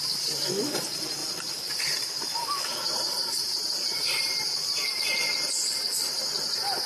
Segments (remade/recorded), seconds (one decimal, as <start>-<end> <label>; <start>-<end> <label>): 0.0-1.2 recorded; 1.2-4.9 remade; 4.9-6.9 recorded

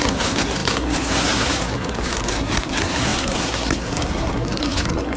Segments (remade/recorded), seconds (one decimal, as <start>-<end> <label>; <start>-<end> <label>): 0.0-5.2 remade

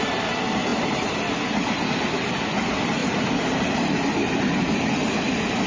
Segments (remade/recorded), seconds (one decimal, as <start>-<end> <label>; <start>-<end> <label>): 0.0-3.0 remade; 3.0-4.3 recorded; 4.3-5.7 remade

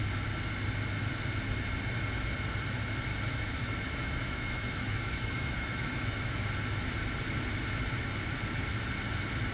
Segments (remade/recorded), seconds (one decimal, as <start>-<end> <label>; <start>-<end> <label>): 0.0-3.1 recorded; 3.1-6.4 remade; 6.4-9.5 recorded

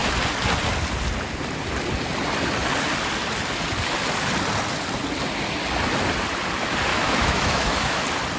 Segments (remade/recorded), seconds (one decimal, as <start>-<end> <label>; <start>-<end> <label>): 0.0-6.9 recorded; 6.9-8.0 remade; 8.0-8.4 recorded

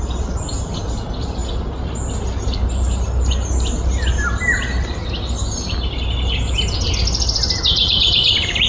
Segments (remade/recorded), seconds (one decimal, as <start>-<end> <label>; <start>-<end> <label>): 0.0-8.7 recorded

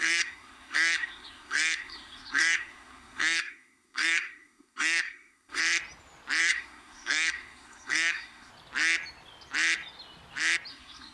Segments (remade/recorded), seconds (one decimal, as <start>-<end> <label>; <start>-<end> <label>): 0.0-5.6 remade; 5.6-6.4 recorded; 6.4-8.5 remade; 8.5-10.7 recorded; 10.7-11.1 remade

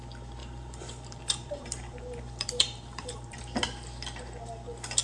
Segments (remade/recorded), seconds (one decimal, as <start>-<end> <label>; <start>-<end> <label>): 0.0-0.4 recorded; 0.4-3.4 remade; 3.4-5.0 recorded